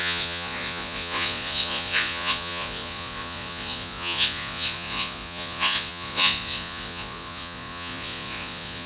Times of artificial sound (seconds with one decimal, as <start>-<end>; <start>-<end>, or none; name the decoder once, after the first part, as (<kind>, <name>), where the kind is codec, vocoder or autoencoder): 0.0-8.9 (vocoder, Vocos)

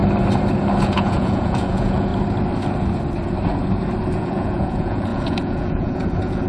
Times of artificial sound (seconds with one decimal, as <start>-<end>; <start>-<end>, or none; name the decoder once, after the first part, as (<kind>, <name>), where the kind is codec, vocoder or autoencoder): 0.8-2.1 (vocoder, Vocos); 4.1-6.5

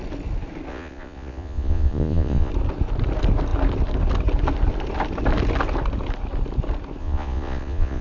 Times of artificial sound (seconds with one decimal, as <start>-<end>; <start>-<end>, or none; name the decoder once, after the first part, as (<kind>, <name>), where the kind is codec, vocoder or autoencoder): 0.7-2.5 (vocoder, Vocos); 7.0-8.0